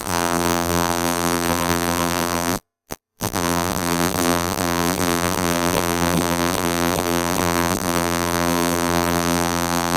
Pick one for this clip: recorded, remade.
remade